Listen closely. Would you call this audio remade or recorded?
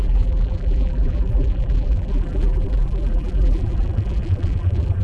remade